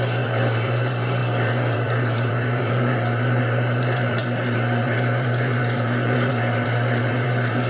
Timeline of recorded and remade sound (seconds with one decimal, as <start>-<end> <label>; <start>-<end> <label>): 0.0-7.7 remade